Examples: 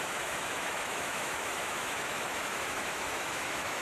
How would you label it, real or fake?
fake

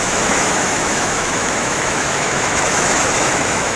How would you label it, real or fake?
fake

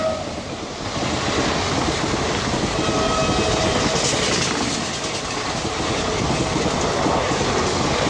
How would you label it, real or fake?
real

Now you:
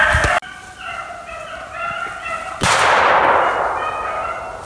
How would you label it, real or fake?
real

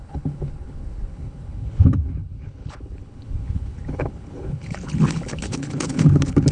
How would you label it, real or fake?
fake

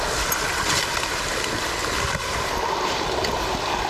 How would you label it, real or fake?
real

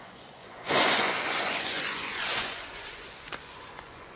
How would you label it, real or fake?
fake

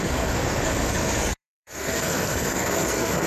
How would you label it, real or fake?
fake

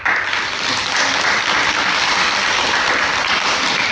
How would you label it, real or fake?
real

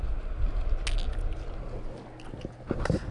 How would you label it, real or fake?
real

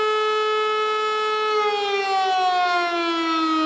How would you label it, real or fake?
real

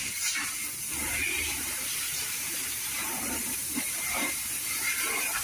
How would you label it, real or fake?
fake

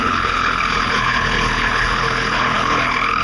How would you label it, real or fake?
fake